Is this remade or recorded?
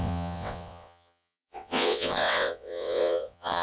remade